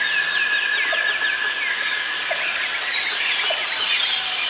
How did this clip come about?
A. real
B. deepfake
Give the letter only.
A